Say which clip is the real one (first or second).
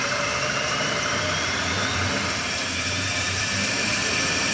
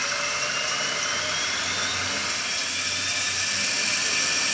second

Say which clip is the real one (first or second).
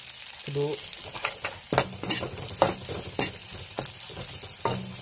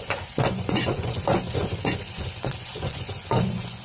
first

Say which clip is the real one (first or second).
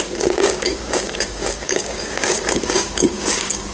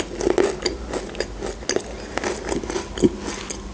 second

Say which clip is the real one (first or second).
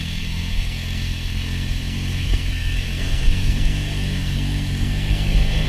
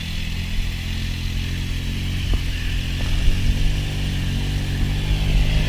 second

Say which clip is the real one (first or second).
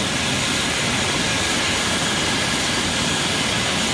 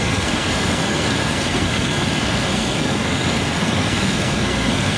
first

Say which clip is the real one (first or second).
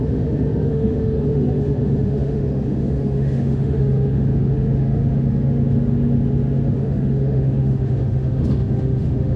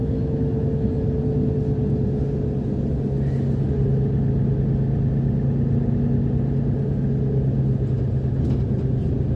second